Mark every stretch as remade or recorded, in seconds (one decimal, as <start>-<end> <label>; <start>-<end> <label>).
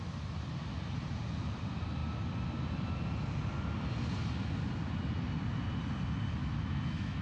0.0-6.4 recorded; 6.4-7.2 remade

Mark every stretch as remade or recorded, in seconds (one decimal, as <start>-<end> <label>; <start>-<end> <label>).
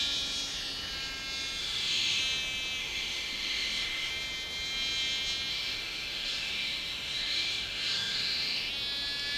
0.0-1.6 recorded; 1.6-2.2 remade; 2.2-2.8 recorded; 2.8-4.1 remade; 4.1-5.5 recorded; 5.5-8.7 remade; 8.7-9.4 recorded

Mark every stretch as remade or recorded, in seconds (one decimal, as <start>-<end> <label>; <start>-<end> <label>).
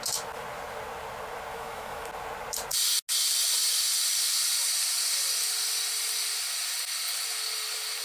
0.0-1.5 recorded; 1.5-2.1 remade; 2.1-8.0 recorded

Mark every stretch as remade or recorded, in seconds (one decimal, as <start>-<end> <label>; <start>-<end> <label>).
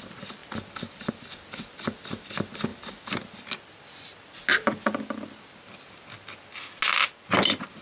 0.0-7.8 recorded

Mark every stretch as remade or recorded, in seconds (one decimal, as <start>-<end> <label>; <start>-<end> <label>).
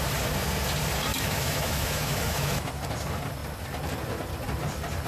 0.0-1.1 recorded; 1.1-2.7 remade; 2.7-5.1 recorded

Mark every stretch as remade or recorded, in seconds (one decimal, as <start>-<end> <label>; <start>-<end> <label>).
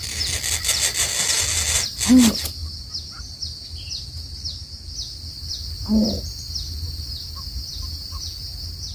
0.0-8.9 recorded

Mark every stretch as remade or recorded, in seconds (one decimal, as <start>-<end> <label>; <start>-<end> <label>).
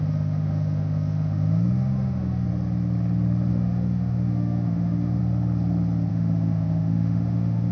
0.0-2.5 remade; 2.5-3.5 recorded; 3.5-5.2 remade; 5.2-6.1 recorded; 6.1-7.7 remade